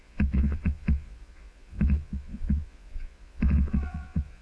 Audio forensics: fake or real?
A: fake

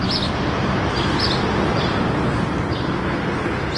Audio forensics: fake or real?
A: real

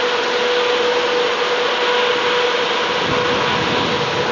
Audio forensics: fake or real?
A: real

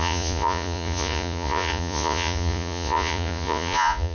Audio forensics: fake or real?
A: fake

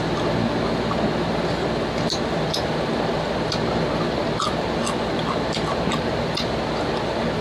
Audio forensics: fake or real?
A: real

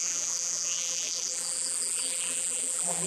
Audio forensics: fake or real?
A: fake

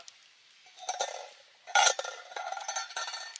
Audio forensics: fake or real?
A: real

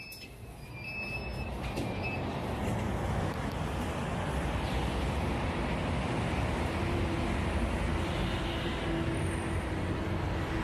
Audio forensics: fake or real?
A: real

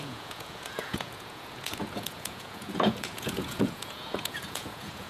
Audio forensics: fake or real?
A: fake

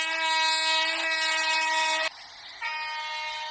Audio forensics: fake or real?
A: real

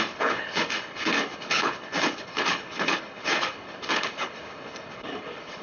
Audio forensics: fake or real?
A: fake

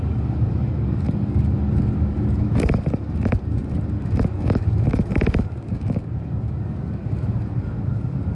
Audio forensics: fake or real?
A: fake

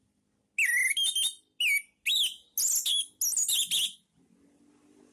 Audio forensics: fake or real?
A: real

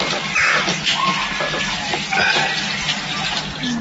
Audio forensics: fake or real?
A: real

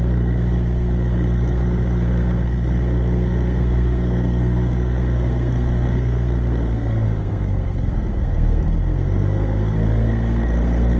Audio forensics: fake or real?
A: fake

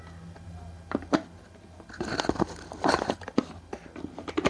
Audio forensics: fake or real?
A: real